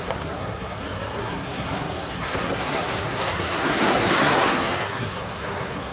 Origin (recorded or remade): remade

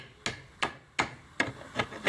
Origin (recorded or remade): recorded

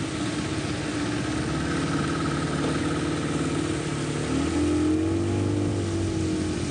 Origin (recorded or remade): recorded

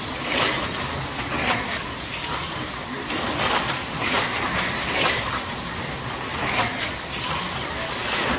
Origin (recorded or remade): recorded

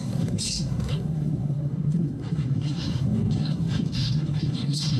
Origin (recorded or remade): remade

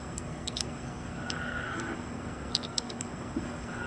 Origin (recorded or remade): remade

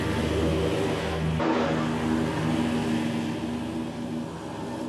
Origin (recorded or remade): recorded